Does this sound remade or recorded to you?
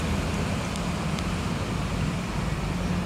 recorded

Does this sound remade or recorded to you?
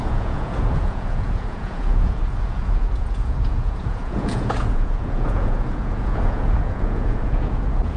remade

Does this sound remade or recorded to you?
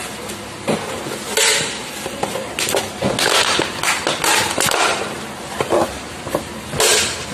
recorded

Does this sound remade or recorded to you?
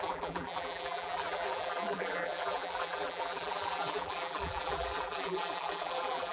remade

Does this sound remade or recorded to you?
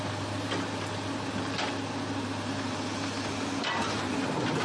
recorded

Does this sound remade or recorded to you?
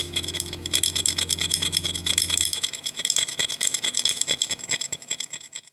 remade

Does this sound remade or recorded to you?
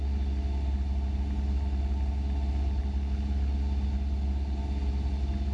recorded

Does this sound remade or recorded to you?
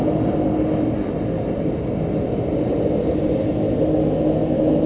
recorded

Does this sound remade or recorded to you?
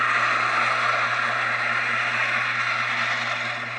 recorded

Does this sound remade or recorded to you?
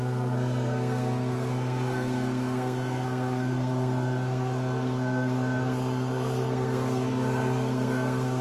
remade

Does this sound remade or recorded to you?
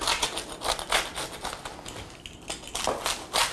recorded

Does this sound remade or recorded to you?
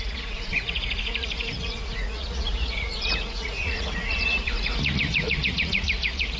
remade